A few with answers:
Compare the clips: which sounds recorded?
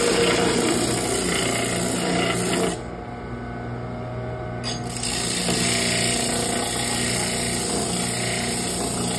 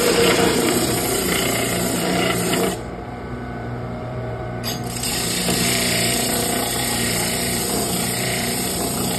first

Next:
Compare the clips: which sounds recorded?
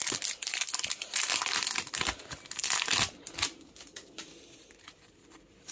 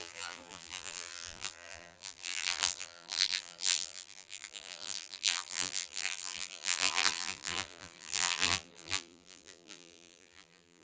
first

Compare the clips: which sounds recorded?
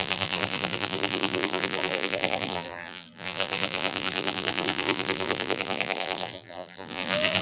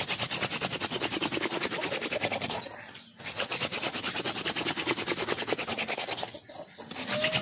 second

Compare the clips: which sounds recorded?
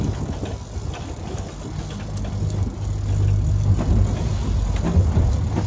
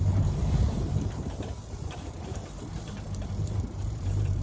first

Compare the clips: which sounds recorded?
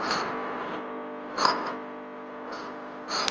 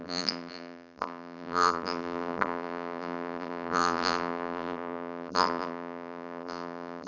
first